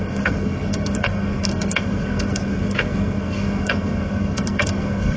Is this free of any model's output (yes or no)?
no